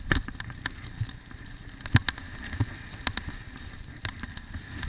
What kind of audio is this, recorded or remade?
recorded